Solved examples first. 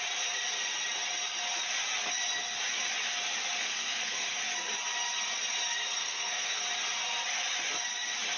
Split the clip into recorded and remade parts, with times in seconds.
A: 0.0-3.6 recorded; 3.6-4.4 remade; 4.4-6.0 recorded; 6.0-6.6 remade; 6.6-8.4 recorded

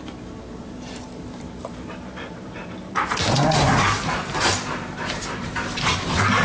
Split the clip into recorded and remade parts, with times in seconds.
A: 0.0-6.4 remade